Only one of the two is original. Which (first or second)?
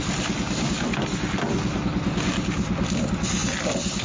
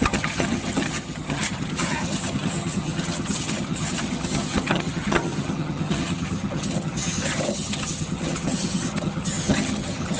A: first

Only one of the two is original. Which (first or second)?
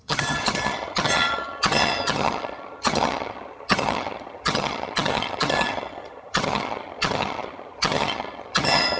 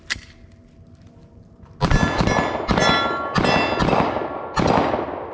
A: second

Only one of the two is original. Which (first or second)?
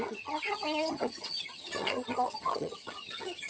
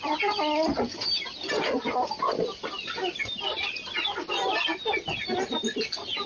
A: second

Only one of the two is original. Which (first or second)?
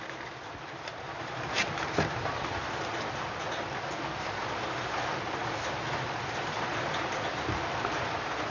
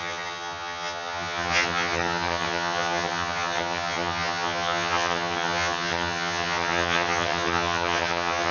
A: first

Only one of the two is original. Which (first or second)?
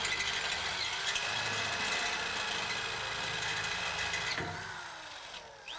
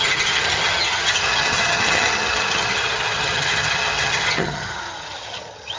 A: first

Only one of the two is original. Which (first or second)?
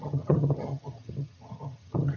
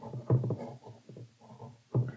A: second